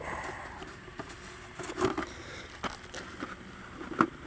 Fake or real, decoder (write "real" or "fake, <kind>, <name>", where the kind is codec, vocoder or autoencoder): real